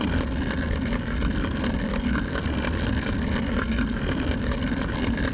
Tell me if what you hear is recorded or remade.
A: recorded